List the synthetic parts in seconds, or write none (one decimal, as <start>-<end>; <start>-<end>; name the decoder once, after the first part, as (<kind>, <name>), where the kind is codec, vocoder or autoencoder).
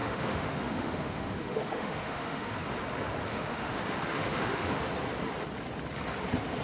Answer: 0.0-2.5 (autoencoder, DAC-VAE); 3.3-4.9